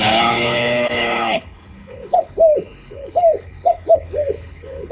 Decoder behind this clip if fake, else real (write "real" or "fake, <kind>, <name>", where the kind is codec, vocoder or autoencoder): fake, codec, HILCodec